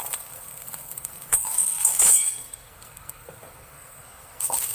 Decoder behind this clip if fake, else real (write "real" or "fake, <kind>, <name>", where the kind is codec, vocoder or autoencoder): fake, codec, SNAC